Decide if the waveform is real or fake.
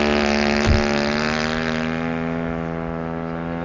real